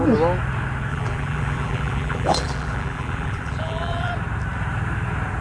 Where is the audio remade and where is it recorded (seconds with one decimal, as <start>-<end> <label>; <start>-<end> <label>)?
0.0-0.9 recorded; 0.9-4.1 remade; 4.1-5.4 recorded